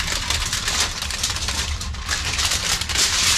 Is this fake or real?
fake